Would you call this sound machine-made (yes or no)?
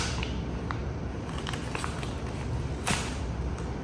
no